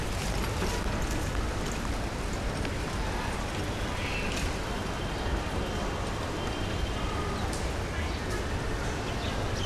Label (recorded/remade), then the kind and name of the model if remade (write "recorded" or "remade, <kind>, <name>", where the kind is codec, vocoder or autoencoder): recorded